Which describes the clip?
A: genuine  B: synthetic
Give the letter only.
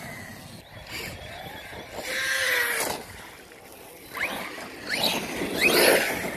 A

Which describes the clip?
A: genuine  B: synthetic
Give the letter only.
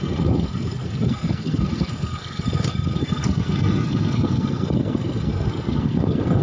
B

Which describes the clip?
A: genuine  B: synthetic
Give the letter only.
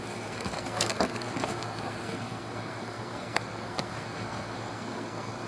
B